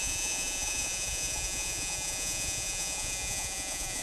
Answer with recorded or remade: remade